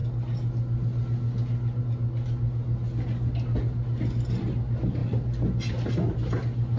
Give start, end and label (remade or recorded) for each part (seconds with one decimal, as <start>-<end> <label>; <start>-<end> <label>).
0.0-6.8 recorded